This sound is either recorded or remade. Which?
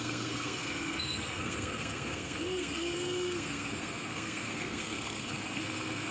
remade